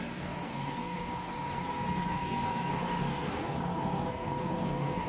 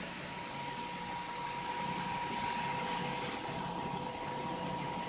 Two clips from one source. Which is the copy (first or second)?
first